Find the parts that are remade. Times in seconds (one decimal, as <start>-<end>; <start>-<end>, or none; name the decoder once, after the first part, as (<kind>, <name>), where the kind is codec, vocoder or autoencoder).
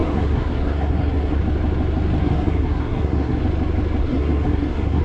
0.0-1.4 (codec, SNAC); 2.2-3.4; 4.0-5.0